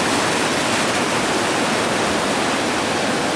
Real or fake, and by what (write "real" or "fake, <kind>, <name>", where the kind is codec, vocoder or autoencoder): real